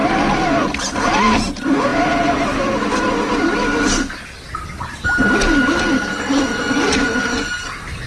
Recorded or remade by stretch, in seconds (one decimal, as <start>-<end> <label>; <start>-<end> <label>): 0.0-8.1 recorded